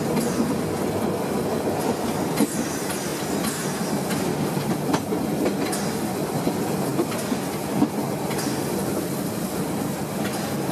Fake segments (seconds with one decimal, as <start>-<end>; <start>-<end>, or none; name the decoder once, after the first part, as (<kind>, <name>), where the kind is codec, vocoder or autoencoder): none